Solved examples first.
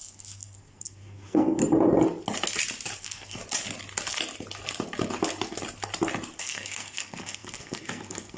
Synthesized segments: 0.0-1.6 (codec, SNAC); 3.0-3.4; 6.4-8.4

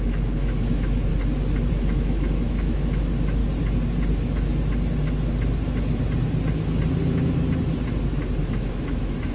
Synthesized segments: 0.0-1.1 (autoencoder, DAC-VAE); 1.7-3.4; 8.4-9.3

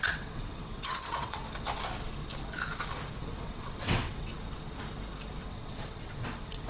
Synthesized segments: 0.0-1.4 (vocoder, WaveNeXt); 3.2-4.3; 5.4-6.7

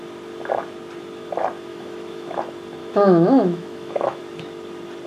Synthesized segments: 1.7-2.4 (autoencoder, DAC-VAE); 2.8-4.2